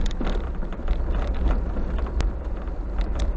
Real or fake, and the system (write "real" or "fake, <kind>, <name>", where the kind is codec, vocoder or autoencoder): real